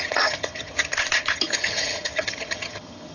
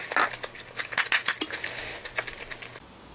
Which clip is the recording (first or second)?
second